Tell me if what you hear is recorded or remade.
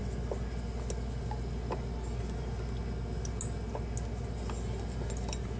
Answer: recorded